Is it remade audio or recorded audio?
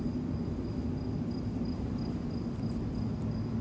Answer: recorded